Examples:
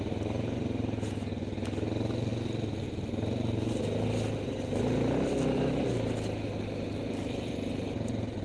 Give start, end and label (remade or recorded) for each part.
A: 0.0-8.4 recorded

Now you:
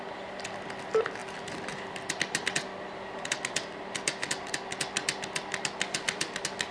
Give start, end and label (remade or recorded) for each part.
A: 0.0-6.7 recorded

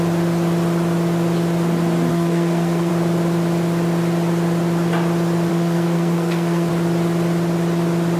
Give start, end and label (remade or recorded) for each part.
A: 0.0-2.1 recorded; 2.1-2.9 remade; 2.9-5.5 recorded; 5.5-6.7 remade; 6.7-8.2 recorded

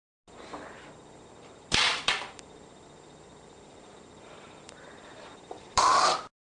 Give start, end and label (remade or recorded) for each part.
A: 0.0-1.9 recorded; 1.9-5.8 remade; 5.8-6.5 recorded

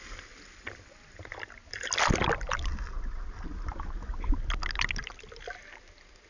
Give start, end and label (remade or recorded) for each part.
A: 0.0-6.3 recorded

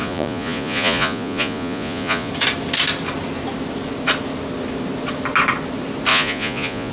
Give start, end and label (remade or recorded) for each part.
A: 0.0-2.3 remade; 2.3-6.1 recorded; 6.1-6.9 remade